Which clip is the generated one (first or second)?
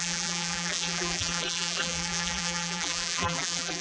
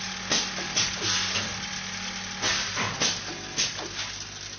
first